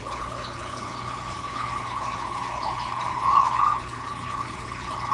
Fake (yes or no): yes